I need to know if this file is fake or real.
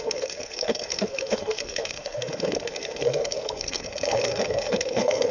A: fake